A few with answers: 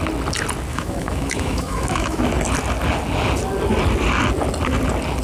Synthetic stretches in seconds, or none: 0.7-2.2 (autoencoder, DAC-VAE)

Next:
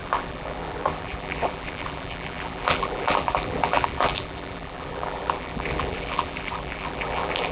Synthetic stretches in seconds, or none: 0.0-7.5 (vocoder, BigVGAN v2)

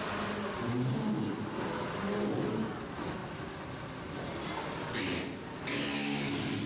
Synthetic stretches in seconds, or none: none

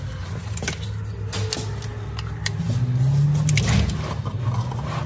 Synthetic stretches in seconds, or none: none

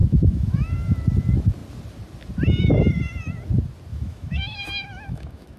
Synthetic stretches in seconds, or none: 0.0-0.7 (autoencoder, DAC-VAE); 3.9-5.6

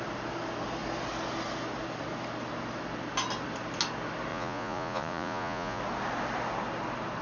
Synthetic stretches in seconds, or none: 4.3-5.8 (vocoder, Vocos)

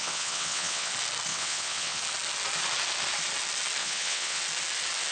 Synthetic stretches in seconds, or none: 0.0-0.9 (vocoder, WaveNeXt); 1.3-2.0; 3.8-4.4

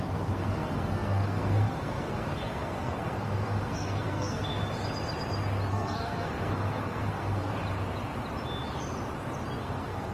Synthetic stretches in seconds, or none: 0.0-4.6 (codec, SNAC); 5.7-7.5; 9.6-10.1